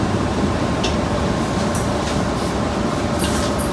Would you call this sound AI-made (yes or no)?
no